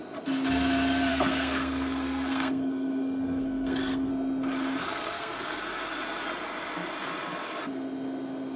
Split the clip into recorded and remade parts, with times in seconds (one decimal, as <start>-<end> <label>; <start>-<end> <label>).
0.0-1.1 recorded; 1.1-4.1 remade; 4.1-4.8 recorded; 4.8-5.6 remade; 5.6-8.6 recorded